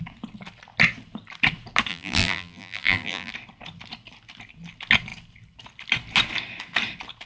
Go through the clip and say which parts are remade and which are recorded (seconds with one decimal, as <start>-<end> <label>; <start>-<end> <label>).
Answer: 0.0-1.9 recorded; 1.9-3.3 remade; 3.3-7.3 recorded